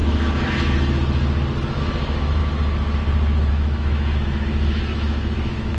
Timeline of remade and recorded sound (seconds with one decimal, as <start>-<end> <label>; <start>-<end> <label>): 0.0-1.8 recorded; 1.8-2.4 remade; 2.4-3.5 recorded; 3.5-5.8 remade